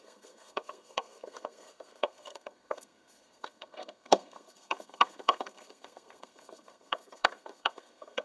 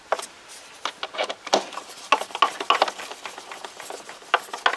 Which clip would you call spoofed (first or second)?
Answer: first